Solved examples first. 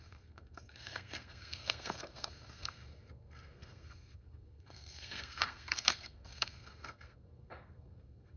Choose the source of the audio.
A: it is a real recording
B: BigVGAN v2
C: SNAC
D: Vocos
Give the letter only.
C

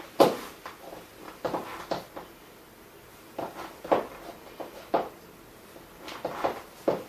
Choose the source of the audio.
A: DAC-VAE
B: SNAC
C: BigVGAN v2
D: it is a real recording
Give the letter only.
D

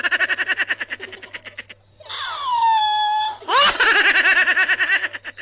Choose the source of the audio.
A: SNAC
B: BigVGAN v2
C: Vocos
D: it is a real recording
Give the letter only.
D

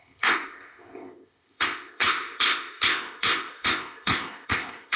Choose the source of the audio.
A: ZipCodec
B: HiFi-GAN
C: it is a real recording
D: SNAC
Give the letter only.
A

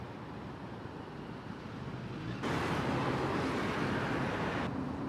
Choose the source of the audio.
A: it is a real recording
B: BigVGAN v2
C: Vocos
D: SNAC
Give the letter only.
A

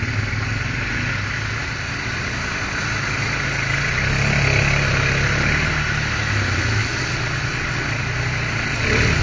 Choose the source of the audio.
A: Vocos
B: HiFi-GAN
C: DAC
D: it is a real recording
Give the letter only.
D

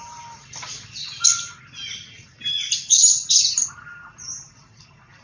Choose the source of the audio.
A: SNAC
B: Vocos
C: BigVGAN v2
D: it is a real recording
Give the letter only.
D